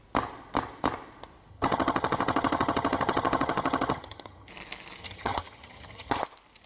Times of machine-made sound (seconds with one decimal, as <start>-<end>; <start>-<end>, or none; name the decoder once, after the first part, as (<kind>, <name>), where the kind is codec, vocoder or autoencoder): 1.5-4.5 (vocoder, HiFi-GAN); 5.0-6.1